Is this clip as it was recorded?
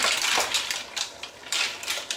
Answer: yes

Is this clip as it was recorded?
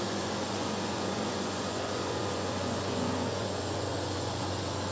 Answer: no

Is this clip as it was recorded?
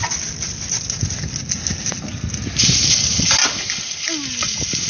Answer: yes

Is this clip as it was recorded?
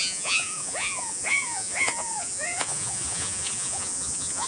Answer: no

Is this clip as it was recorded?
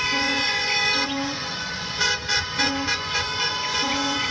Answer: no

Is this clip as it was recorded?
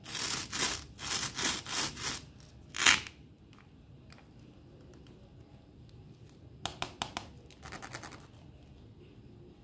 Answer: yes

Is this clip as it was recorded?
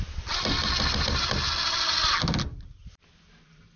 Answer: yes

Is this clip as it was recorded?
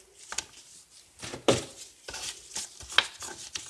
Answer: yes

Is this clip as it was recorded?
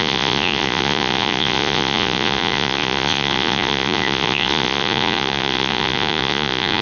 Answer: no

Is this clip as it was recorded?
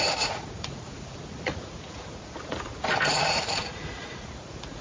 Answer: no